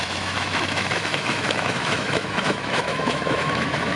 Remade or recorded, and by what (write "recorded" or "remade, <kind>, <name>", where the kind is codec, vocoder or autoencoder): remade, autoencoder, DAC-VAE